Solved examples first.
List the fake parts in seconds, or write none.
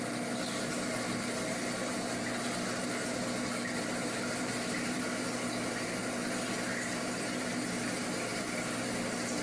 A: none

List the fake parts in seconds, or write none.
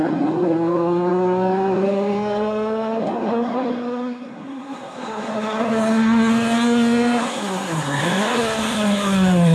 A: 0.0-9.5 (codec, SNAC)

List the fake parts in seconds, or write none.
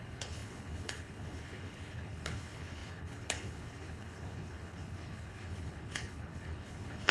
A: 0.0-7.1 (codec, HILCodec)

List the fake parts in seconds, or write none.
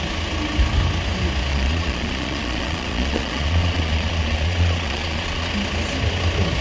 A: 1.5-5.5 (vocoder, Vocos)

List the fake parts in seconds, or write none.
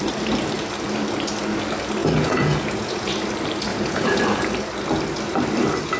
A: 2.0-3.1 (vocoder, Vocos); 3.7-4.2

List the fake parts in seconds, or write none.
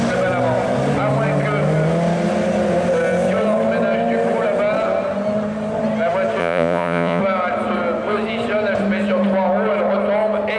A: 6.4-7.2 (vocoder, Vocos)